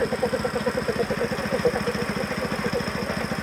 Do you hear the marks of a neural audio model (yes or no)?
no